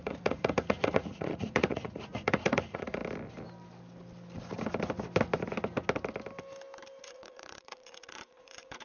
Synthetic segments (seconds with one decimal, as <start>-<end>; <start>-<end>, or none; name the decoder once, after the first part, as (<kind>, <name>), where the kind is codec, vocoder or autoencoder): 0.0-3.0 (vocoder, Vocos); 7.0-8.8